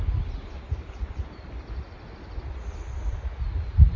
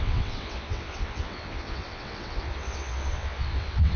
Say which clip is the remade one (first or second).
second